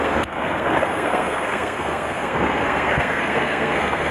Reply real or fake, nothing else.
fake